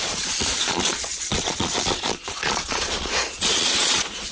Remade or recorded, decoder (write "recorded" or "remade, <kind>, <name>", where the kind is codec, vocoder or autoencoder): remade, vocoder, Vocos